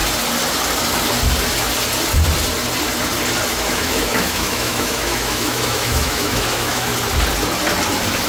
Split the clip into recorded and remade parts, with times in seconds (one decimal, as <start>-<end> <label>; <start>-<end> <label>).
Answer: 0.0-3.5 recorded; 3.5-6.9 remade; 6.9-8.3 recorded